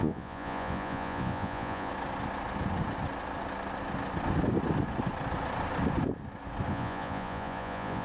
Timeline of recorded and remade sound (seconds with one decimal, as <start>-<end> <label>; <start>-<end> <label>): 0.0-1.9 remade; 1.9-6.7 recorded; 6.7-8.0 remade

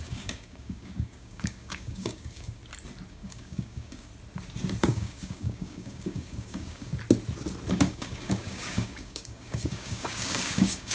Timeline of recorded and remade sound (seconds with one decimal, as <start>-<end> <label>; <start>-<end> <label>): 0.0-2.6 remade; 2.6-3.1 recorded; 3.1-4.1 remade; 4.1-4.8 recorded; 4.8-6.9 remade; 6.9-7.7 recorded; 7.7-10.9 remade

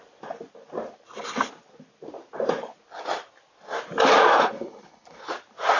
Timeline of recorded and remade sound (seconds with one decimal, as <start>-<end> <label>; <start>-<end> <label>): 0.0-4.3 recorded; 4.3-5.2 remade; 5.2-5.8 recorded

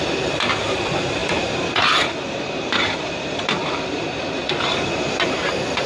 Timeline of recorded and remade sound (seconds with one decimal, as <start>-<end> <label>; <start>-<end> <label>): 0.0-5.9 remade

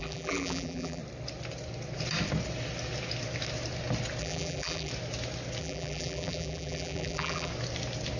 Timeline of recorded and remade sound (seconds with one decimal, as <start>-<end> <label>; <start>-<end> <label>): 0.0-1.0 remade; 1.0-4.2 recorded; 4.2-4.9 remade; 4.9-5.6 recorded; 5.6-7.5 remade; 7.5-8.2 recorded